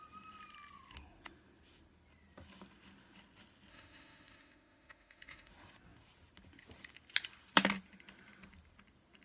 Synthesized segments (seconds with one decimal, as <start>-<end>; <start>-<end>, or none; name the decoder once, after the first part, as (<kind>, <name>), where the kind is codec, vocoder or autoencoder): 3.7-5.5 (autoencoder, DAC-VAE)